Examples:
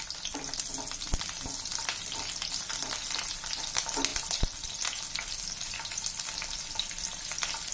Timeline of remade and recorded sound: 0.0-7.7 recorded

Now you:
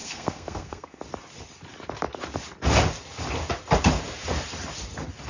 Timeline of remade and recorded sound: 0.0-1.0 remade; 1.0-5.3 recorded

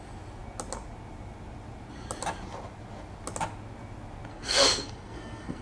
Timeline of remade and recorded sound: 0.0-4.3 recorded; 4.3-5.6 remade